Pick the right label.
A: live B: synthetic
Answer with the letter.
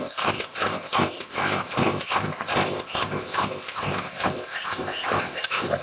B